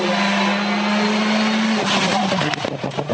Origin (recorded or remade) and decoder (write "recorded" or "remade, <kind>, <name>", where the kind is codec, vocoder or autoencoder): recorded